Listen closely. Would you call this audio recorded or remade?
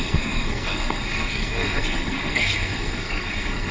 remade